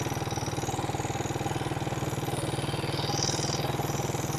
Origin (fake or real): real